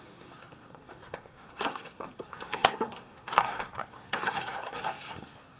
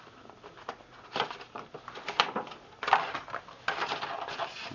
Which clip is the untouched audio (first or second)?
second